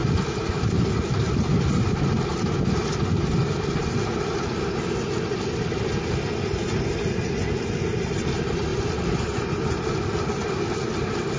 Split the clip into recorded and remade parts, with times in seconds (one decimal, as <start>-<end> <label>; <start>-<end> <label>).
0.0-11.4 recorded